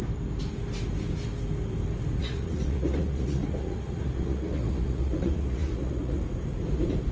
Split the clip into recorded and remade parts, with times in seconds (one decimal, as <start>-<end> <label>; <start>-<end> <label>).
0.0-2.2 recorded; 2.2-6.2 remade; 6.2-7.1 recorded